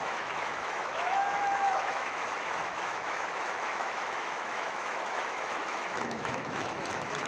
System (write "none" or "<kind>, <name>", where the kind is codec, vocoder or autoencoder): autoencoder, DAC-VAE